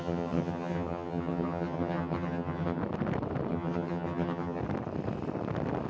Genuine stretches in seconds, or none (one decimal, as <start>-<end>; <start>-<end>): 2.8-3.5; 4.6-5.9

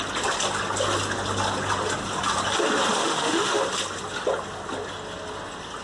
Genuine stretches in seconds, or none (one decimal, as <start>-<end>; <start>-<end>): 0.0-3.0; 3.6-5.8

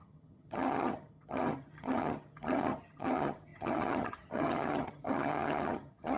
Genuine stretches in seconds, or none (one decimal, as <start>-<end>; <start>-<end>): none

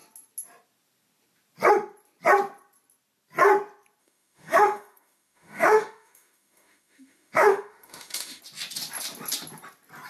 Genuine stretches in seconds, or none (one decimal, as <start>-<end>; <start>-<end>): 0.0-4.0; 8.4-10.1

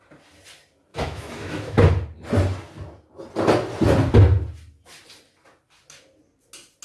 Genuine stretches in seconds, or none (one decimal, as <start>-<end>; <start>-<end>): 0.0-0.9; 1.8-6.8